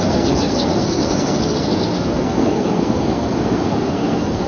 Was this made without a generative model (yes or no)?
no